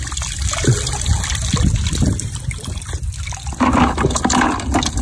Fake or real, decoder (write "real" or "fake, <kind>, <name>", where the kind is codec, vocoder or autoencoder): real